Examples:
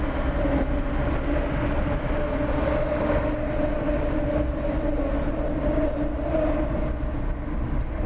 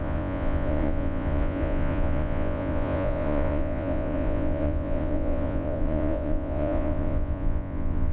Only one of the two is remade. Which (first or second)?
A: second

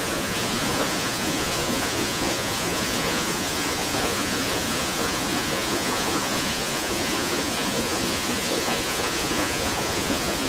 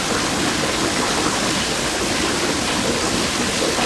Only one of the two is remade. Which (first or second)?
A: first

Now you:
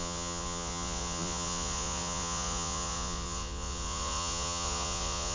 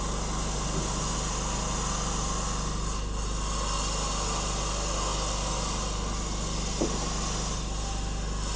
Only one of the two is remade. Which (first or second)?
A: first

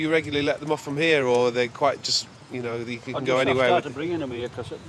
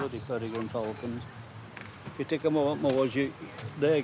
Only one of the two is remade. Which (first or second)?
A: first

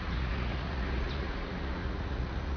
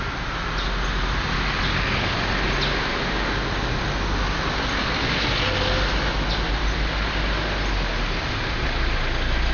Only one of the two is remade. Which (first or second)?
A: first